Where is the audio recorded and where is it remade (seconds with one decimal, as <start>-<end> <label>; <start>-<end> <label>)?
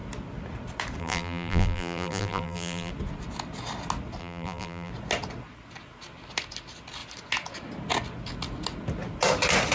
0.0-1.0 recorded; 1.0-2.9 remade; 2.9-4.2 recorded; 4.2-4.9 remade; 4.9-9.7 recorded